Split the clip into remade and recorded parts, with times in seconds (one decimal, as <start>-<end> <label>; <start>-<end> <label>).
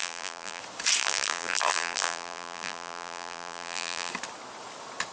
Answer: 0.0-0.6 remade; 0.6-1.0 recorded; 1.0-4.1 remade; 4.1-5.1 recorded